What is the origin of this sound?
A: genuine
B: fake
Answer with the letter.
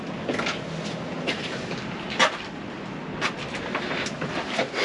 A